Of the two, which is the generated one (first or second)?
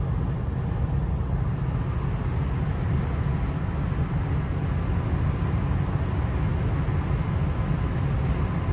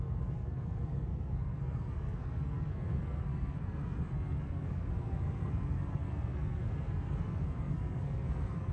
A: second